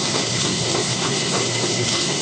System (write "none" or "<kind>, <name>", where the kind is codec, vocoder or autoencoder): codec, SNAC